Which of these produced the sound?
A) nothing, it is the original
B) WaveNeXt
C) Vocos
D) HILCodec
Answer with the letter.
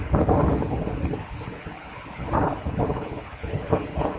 D